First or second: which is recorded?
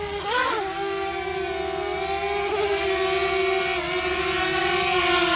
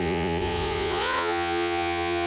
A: first